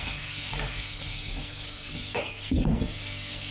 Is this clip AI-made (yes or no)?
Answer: yes